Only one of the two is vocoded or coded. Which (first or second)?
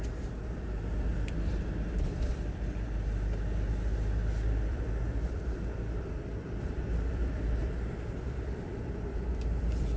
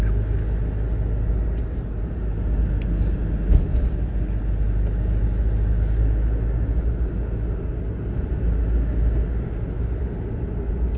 first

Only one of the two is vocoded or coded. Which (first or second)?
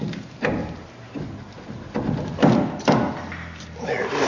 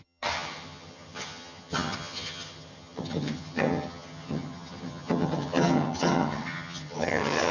second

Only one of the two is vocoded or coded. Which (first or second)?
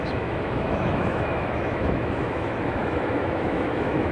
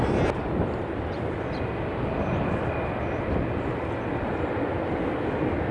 first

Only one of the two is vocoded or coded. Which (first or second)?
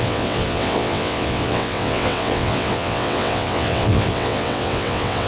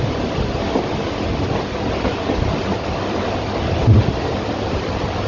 first